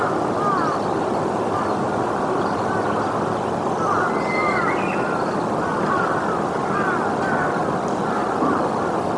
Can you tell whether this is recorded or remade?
recorded